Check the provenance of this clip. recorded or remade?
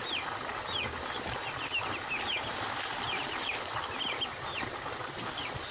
recorded